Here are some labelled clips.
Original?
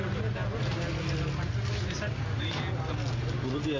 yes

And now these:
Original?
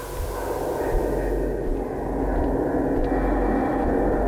yes